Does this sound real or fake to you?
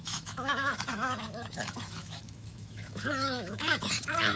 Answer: fake